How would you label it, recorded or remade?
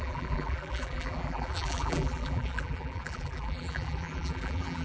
remade